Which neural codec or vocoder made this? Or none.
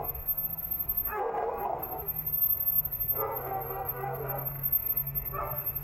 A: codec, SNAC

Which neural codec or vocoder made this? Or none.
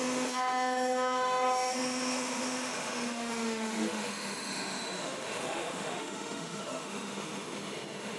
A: autoencoder, DAC-VAE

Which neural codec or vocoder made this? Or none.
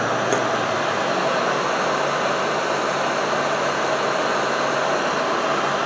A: none